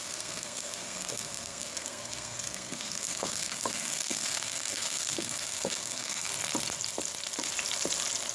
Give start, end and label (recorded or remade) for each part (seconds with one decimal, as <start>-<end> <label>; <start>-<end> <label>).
0.0-6.3 remade; 6.3-8.3 recorded